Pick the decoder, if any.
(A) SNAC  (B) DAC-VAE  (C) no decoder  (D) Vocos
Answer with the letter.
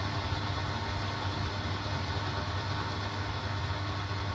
C